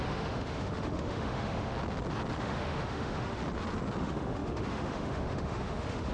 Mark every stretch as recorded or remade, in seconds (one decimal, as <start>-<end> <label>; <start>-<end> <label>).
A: 0.0-1.7 remade; 1.7-2.4 recorded; 2.4-3.4 remade; 3.4-4.0 recorded; 4.0-6.1 remade